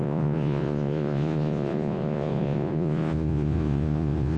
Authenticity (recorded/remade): remade